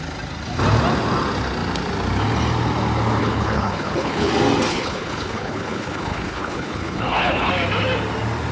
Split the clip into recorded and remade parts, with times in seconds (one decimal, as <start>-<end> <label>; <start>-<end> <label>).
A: 0.0-3.2 recorded; 3.2-4.3 remade; 4.3-4.7 recorded; 4.7-7.5 remade; 7.5-8.5 recorded